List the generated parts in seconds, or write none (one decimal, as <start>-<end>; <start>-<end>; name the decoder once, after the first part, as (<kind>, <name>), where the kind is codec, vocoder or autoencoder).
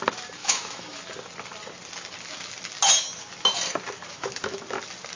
0.4-1.0 (autoencoder, DAC-VAE); 4.1-4.6